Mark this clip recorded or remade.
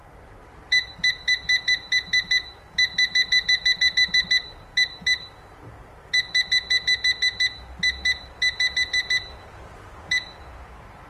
recorded